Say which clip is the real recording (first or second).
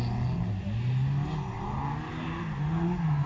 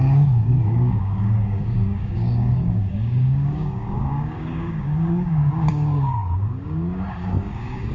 first